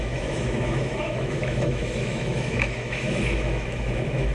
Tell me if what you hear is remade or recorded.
remade